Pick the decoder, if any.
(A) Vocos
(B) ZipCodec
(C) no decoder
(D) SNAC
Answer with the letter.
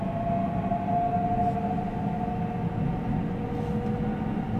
C